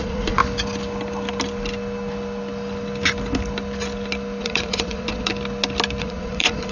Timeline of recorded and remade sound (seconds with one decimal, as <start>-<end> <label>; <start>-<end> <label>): 0.0-0.4 remade; 0.4-4.4 recorded; 4.4-5.3 remade; 5.3-6.0 recorded; 6.0-6.7 remade